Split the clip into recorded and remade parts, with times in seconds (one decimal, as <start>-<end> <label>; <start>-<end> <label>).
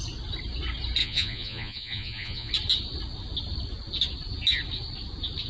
0.0-1.0 recorded; 1.0-2.5 remade; 2.5-5.5 recorded